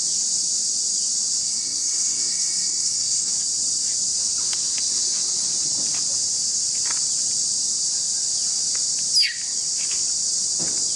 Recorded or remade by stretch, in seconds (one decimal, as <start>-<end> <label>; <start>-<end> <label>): 0.0-1.4 recorded; 1.4-3.3 remade; 3.3-11.0 recorded

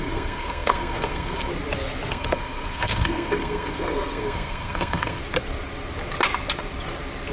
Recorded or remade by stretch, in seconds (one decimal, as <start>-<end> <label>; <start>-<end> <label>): 0.0-1.5 remade; 1.5-2.1 recorded; 2.1-5.2 remade; 5.2-7.3 recorded

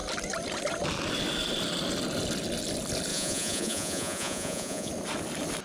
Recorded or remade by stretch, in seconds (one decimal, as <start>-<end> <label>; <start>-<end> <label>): 0.0-3.1 recorded; 3.1-4.9 remade; 4.9-5.6 recorded

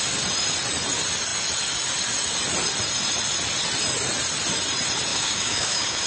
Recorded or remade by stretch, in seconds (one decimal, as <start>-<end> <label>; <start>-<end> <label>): 0.0-5.1 recorded; 5.1-6.1 remade

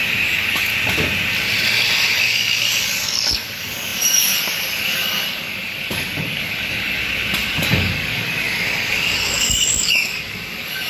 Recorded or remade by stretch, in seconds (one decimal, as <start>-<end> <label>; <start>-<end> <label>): 0.0-0.7 remade; 0.7-2.1 recorded; 2.1-7.0 remade; 7.0-7.5 recorded; 7.5-10.9 remade

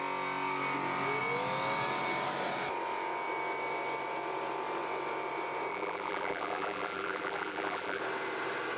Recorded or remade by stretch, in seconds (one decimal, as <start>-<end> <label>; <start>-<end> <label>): 0.0-5.7 recorded; 5.7-8.0 remade; 8.0-8.8 recorded

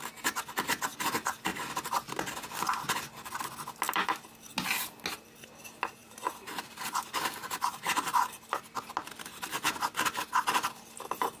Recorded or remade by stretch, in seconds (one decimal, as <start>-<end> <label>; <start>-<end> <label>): 0.0-6.0 recorded; 6.0-8.4 remade; 8.4-11.4 recorded